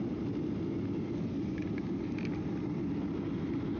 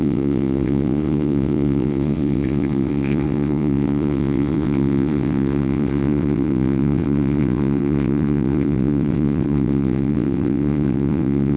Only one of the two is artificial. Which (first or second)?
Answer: second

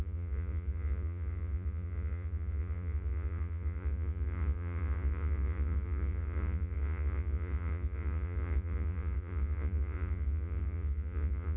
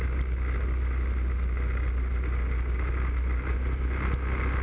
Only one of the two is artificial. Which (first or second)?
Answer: first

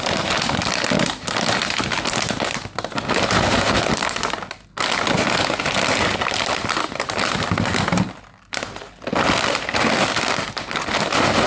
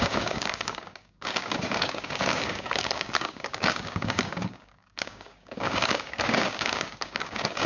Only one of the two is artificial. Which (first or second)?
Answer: second